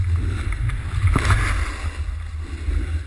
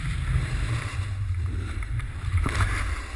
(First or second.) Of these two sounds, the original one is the first